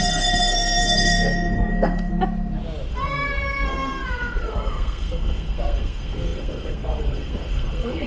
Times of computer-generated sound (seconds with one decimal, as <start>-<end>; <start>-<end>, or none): 0.0-2.1; 2.9-8.1